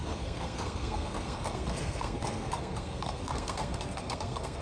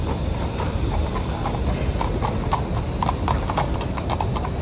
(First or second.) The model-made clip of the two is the first